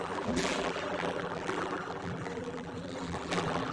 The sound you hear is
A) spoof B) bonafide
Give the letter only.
A